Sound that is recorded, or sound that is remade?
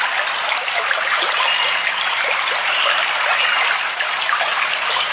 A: recorded